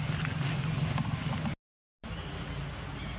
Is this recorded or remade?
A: recorded